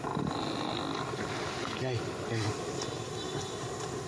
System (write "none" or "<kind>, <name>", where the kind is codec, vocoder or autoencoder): none